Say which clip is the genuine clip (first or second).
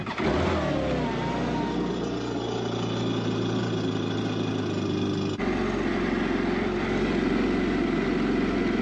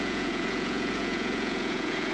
first